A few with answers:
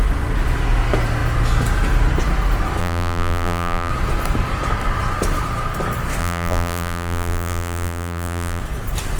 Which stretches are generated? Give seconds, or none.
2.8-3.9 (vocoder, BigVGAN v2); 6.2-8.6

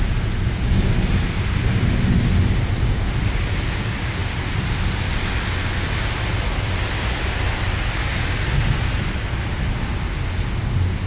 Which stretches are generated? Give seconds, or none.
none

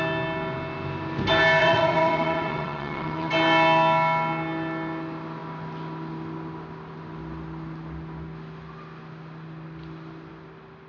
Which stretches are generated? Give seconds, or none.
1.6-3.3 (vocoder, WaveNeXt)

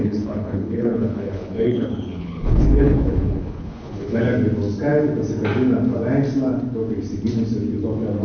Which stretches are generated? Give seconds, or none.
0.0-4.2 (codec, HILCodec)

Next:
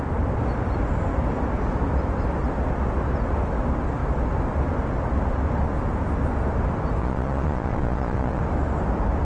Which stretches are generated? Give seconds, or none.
7.0-8.4 (vocoder, Vocos)